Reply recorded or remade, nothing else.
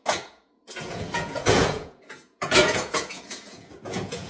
remade